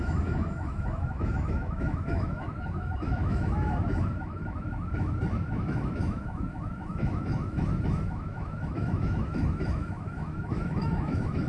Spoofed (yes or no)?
yes